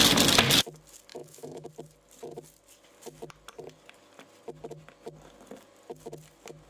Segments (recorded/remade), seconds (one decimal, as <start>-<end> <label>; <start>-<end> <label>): 0.0-1.1 recorded; 1.1-1.7 remade; 1.7-6.7 recorded